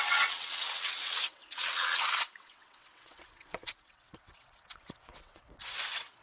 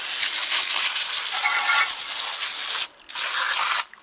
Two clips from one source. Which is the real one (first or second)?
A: second